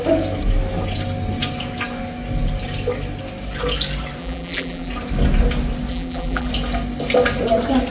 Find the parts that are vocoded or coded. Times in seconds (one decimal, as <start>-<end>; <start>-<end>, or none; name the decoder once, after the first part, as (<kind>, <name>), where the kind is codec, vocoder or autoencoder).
4.2-4.9 (vocoder, BigVGAN v2); 5.9-6.5